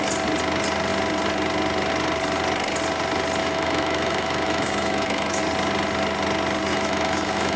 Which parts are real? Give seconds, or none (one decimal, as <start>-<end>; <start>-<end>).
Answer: 0.0-3.4; 5.4-6.7